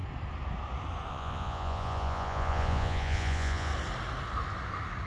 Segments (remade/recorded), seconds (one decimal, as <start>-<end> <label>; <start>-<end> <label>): 0.0-1.1 recorded; 1.1-3.7 remade; 3.7-5.1 recorded

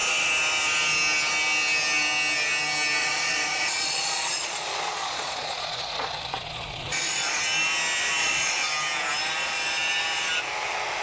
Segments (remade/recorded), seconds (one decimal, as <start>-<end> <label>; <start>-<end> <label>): 0.0-3.0 recorded; 3.0-7.4 remade; 7.4-8.2 recorded; 8.2-8.7 remade; 8.7-11.0 recorded

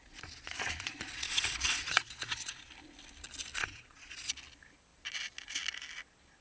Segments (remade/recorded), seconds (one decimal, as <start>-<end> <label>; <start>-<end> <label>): 0.0-2.7 remade; 2.7-3.6 recorded; 3.6-4.3 remade; 4.3-6.4 recorded

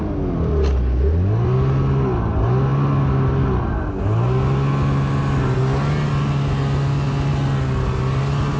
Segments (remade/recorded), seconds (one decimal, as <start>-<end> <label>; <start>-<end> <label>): 0.0-8.6 recorded

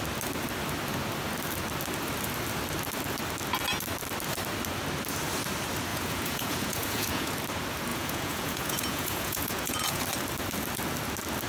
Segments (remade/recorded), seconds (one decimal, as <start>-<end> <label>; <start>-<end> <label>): 0.0-5.9 recorded; 5.9-7.3 remade; 7.3-7.9 recorded; 7.9-10.0 remade; 10.0-11.5 recorded

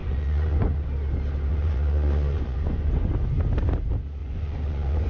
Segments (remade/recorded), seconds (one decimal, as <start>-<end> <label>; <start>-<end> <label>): 0.0-0.8 remade; 0.8-1.5 recorded; 1.5-3.1 remade; 3.1-4.2 recorded; 4.2-5.1 remade

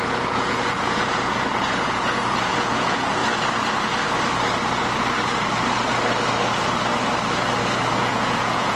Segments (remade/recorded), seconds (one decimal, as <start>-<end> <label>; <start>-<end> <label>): 0.0-3.2 remade; 3.2-8.0 recorded; 8.0-8.8 remade